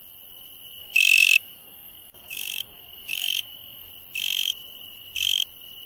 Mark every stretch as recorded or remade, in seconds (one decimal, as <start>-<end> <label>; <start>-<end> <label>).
0.0-0.8 recorded; 0.8-3.9 remade; 3.9-5.9 recorded